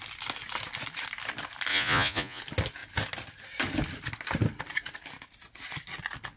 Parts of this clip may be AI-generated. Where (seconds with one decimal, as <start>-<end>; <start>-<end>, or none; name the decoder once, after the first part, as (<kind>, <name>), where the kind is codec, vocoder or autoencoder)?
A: 1.7-2.4 (vocoder, Vocos)